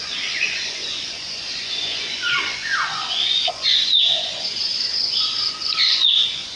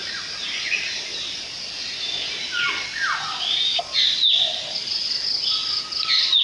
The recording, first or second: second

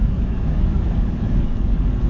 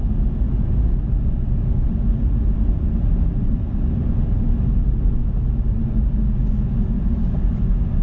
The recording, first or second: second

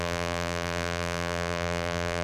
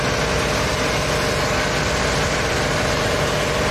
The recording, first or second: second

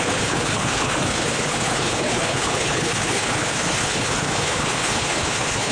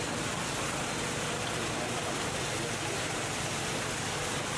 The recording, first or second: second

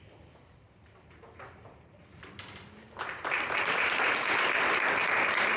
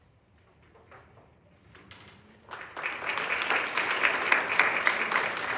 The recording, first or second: second